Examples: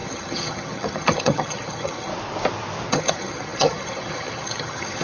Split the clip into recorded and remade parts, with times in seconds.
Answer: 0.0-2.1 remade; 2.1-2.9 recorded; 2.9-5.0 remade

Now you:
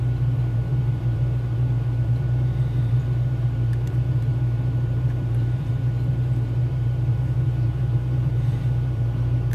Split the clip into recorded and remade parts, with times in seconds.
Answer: 0.0-9.5 remade

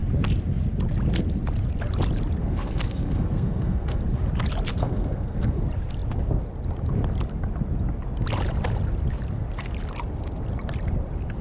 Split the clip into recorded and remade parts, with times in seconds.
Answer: 0.0-2.4 recorded; 2.4-4.0 remade; 4.0-4.7 recorded; 4.7-5.6 remade; 5.6-11.4 recorded

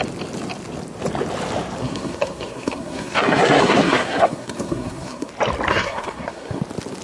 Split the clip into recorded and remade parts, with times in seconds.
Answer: 0.0-1.8 recorded; 1.8-5.3 remade; 5.3-5.7 recorded; 5.7-6.6 remade; 6.6-7.0 recorded

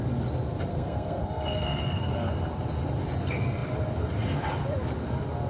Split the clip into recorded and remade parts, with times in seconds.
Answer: 0.0-0.7 recorded; 0.7-2.1 remade; 2.1-5.5 recorded

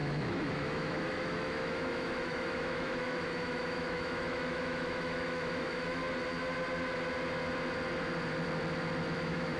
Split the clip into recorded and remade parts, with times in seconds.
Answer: 0.0-6.0 remade; 6.0-9.1 recorded; 9.1-9.6 remade

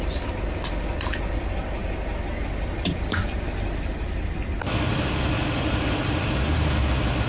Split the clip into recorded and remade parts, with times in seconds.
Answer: 0.0-7.3 recorded

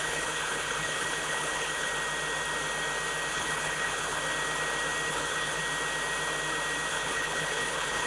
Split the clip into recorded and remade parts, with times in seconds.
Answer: 0.0-1.9 remade; 1.9-3.3 recorded; 3.3-4.2 remade; 4.2-5.1 recorded; 5.1-5.6 remade; 5.6-6.9 recorded; 6.9-8.1 remade